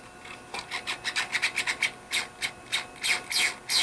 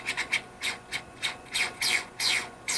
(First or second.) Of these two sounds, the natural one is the first